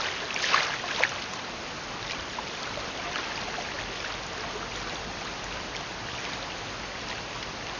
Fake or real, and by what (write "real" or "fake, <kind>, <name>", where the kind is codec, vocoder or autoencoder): real